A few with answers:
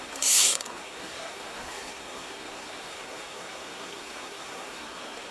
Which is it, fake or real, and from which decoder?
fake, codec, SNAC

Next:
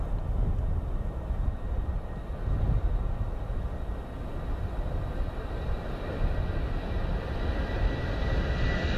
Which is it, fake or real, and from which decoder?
real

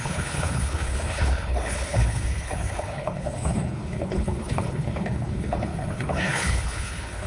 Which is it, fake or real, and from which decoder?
fake, codec, HILCodec